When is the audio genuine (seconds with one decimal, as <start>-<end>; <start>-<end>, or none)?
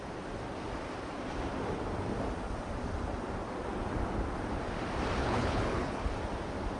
0.0-5.2; 6.1-6.8